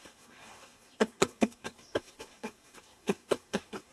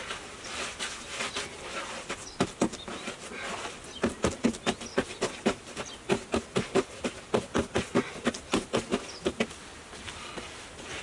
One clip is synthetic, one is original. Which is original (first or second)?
second